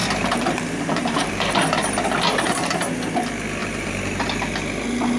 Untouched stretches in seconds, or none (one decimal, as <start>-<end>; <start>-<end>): 1.3-3.6; 4.5-5.2